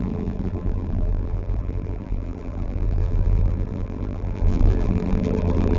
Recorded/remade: remade